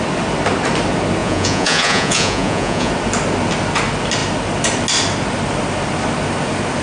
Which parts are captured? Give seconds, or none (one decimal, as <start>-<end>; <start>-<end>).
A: 0.0-1.2; 2.9-6.8